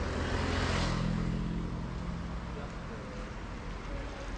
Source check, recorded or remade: recorded